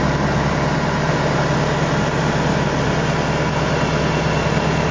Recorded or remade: recorded